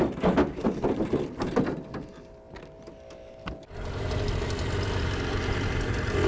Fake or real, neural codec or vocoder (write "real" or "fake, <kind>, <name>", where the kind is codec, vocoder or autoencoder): real